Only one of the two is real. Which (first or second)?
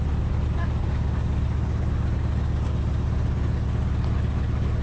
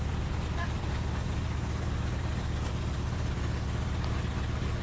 first